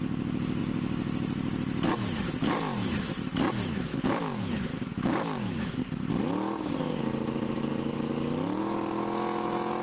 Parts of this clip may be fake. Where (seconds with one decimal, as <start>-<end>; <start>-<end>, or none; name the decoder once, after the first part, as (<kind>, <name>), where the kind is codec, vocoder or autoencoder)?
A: 3.9-5.7 (autoencoder, DAC-VAE)